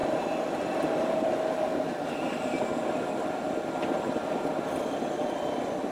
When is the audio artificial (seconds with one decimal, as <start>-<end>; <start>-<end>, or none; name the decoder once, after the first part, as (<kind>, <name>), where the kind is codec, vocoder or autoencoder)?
0.0-2.6 (vocoder, BigVGAN v2)